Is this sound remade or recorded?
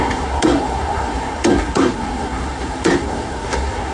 remade